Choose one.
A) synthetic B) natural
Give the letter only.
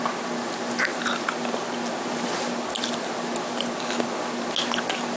B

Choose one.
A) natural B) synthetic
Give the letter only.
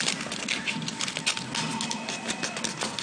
A